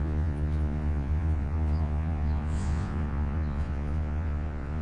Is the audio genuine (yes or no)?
no